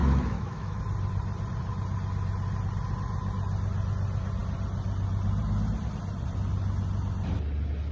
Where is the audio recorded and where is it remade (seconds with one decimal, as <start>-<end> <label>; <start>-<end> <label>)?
0.0-0.8 remade; 0.8-7.9 recorded